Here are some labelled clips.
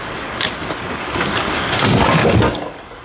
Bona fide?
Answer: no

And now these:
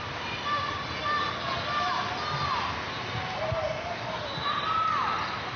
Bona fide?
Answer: yes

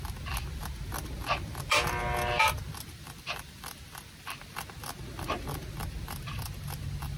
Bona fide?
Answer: yes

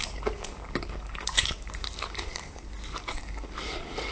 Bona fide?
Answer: no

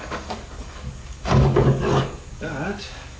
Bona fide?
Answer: no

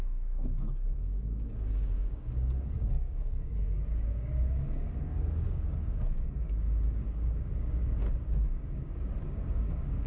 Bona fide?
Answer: no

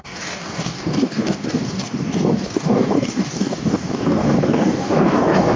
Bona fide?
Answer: no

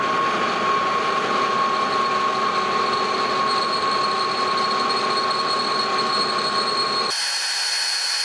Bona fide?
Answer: yes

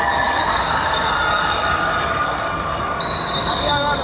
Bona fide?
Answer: no